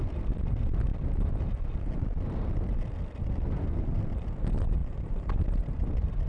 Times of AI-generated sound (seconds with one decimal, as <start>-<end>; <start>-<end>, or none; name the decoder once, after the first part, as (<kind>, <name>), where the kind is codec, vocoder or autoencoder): none